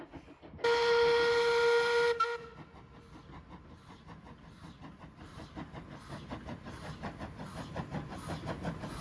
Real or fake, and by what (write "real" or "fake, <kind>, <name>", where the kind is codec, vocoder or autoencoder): real